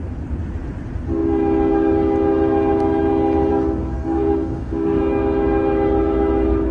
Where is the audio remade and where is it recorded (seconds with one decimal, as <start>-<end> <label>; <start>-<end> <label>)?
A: 0.0-3.5 recorded; 3.5-5.0 remade; 5.0-6.7 recorded